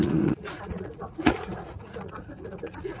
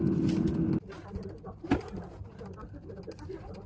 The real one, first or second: second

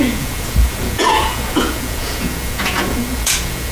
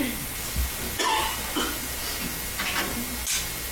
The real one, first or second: second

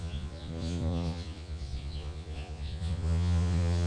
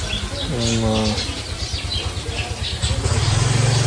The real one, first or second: second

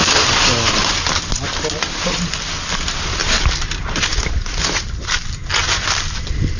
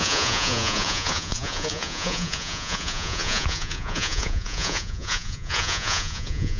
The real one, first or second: first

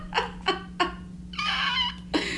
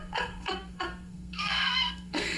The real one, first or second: first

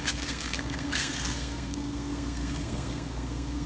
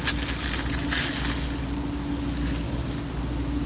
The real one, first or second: second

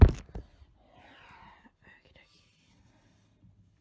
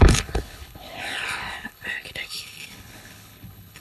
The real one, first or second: first